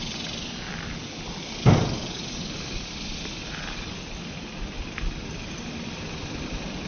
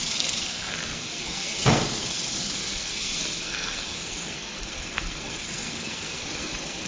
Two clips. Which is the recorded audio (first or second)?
first